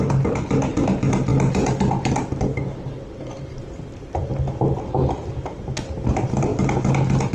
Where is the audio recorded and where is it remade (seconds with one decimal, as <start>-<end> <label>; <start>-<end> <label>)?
0.0-1.3 recorded; 1.3-4.2 remade; 4.2-6.5 recorded; 6.5-7.3 remade